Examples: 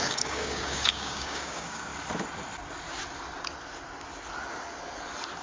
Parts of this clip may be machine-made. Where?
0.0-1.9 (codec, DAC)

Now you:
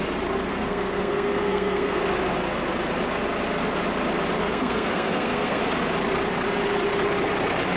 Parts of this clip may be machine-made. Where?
0.5-2.0 (codec, SNAC); 4.4-5.6

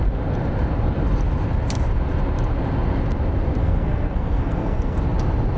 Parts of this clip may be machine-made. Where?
3.6-5.0 (codec, SNAC)

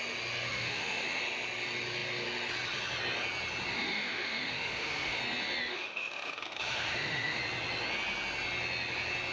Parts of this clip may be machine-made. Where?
0.5-1.2 (autoencoder, DAC-VAE); 3.7-5.2; 5.7-7.4

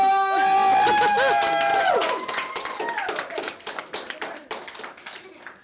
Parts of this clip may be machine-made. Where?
1.7-2.8 (vocoder, Vocos)

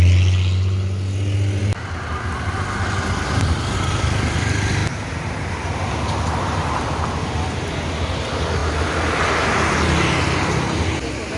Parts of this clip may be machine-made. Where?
none